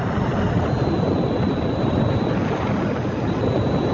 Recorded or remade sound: recorded